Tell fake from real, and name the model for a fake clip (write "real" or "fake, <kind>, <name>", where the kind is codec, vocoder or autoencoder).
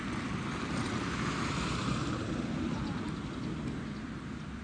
real